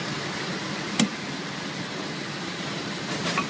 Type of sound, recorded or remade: recorded